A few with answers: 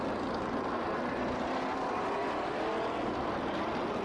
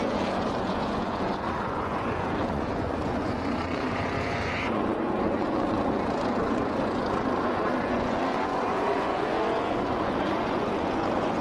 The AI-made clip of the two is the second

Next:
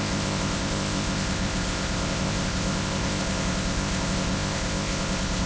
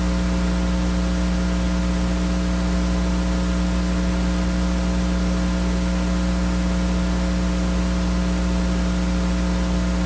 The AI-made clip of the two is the first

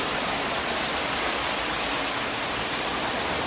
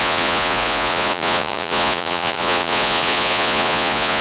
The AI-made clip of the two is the second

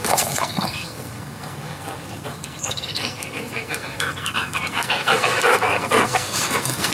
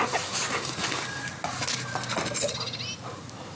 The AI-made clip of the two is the first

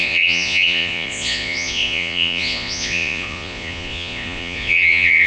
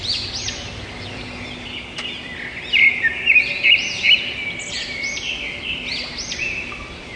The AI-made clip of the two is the first